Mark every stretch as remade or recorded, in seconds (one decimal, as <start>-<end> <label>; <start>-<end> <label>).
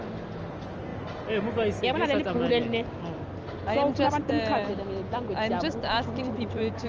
0.0-6.9 recorded